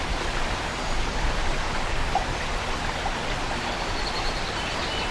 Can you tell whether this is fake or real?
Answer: fake